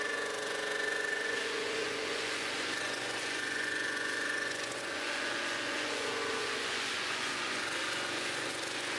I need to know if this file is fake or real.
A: fake